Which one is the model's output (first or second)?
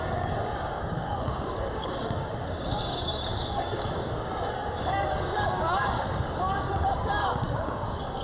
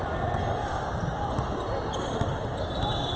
first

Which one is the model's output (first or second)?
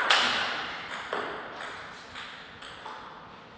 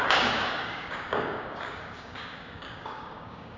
second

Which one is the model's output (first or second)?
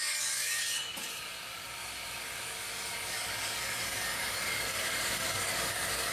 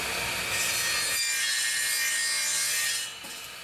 first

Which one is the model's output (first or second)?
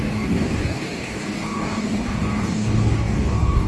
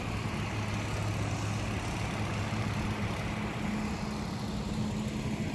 first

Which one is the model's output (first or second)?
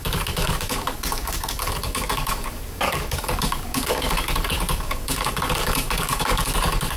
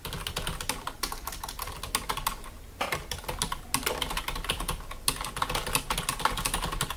first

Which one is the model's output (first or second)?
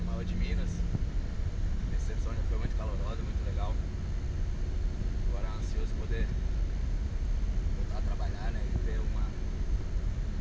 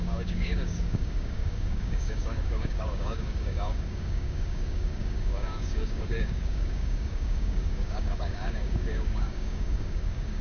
second